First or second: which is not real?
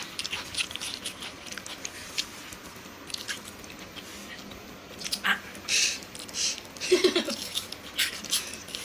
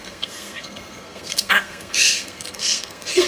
second